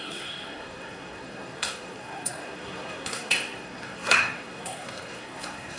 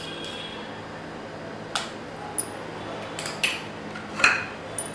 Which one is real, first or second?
second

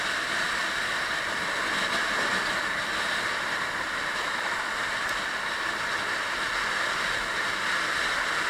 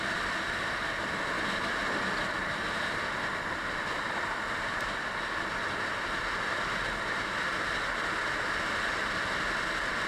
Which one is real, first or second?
second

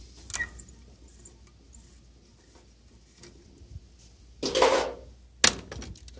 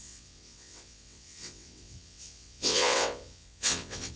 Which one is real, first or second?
first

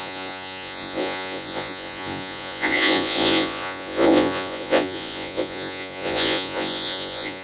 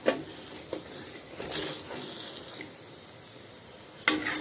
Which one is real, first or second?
second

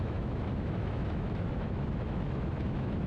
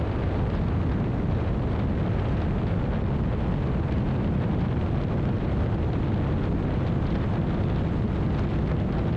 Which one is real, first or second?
second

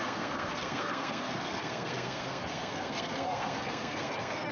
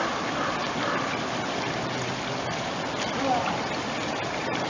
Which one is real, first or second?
second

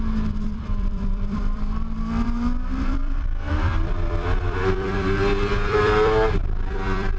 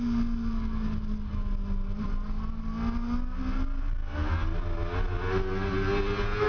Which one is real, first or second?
second